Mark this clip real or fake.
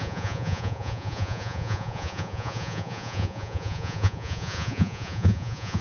fake